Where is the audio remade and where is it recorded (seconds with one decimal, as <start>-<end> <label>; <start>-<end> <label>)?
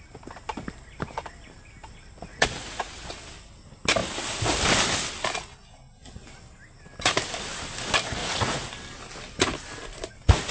0.0-2.3 recorded; 2.3-2.9 remade; 2.9-8.2 recorded; 8.2-8.7 remade; 8.7-10.5 recorded